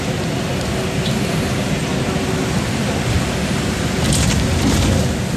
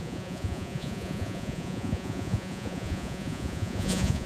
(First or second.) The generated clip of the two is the second